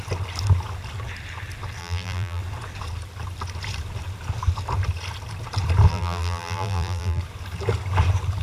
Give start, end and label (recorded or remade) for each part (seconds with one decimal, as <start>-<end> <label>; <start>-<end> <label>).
0.0-1.8 recorded; 1.8-2.4 remade; 2.4-5.9 recorded; 5.9-7.2 remade; 7.2-8.4 recorded